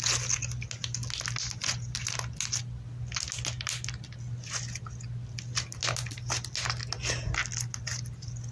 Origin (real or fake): real